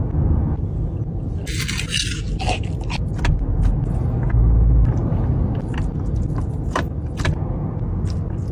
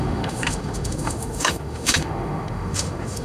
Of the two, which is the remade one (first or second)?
second